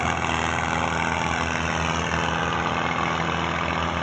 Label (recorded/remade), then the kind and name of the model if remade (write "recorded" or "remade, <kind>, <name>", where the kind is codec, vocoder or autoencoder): recorded